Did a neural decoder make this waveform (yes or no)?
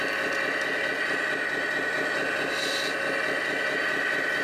no